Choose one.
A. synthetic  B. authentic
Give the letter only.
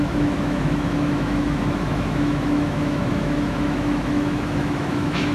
A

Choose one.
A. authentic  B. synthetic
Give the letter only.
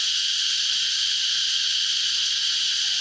A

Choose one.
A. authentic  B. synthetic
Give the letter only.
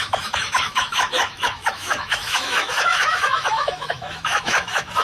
B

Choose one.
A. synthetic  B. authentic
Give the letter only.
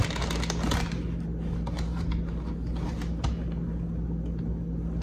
B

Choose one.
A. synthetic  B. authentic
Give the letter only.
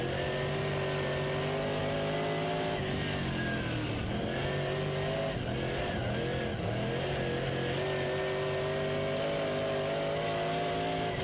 B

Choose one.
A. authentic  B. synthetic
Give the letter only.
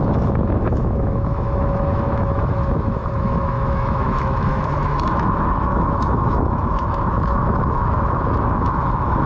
B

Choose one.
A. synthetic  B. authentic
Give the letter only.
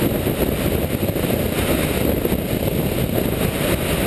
B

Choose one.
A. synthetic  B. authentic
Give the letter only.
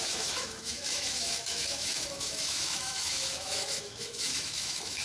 A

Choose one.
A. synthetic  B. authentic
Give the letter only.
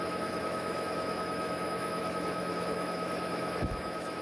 A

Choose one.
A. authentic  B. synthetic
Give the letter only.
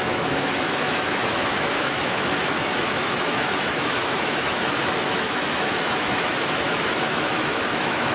B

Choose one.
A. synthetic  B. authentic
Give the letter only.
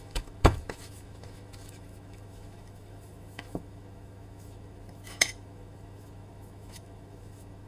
A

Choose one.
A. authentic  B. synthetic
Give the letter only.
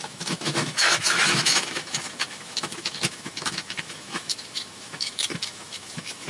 B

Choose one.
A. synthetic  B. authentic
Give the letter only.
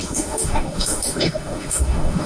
A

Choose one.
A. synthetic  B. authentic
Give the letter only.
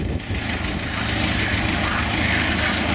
B